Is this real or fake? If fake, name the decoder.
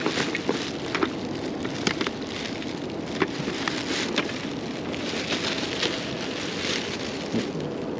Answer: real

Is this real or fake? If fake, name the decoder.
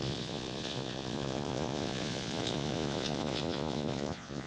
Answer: fake, vocoder, Vocos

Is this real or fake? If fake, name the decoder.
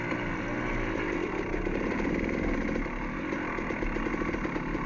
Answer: real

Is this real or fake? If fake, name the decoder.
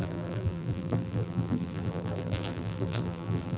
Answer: fake, vocoder, BigVGAN v2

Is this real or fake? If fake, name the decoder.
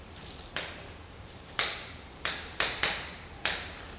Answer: fake, vocoder, BigVGAN v2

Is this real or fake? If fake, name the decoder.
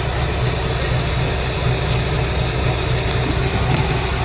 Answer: real